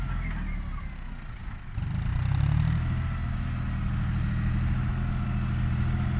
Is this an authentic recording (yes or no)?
yes